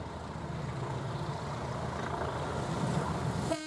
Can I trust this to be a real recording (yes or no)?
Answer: yes